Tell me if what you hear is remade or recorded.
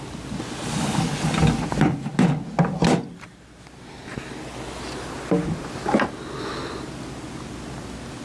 recorded